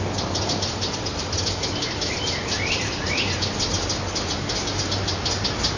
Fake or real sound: real